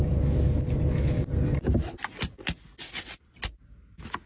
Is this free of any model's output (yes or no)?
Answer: yes